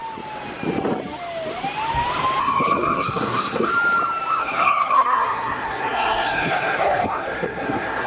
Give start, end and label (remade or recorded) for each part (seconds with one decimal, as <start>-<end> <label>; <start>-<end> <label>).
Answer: 0.0-2.4 recorded; 2.4-3.7 remade; 3.7-4.4 recorded; 4.4-8.1 remade